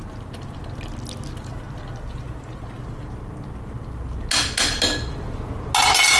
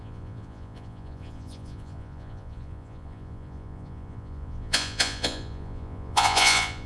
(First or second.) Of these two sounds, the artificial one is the second